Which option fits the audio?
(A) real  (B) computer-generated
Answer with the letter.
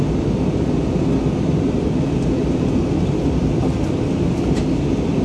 A